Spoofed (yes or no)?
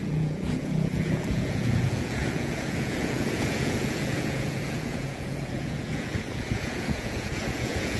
yes